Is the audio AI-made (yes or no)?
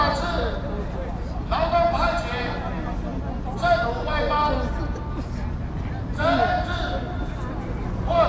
no